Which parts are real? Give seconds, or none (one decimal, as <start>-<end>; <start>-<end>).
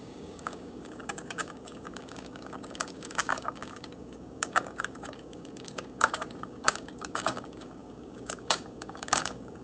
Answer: none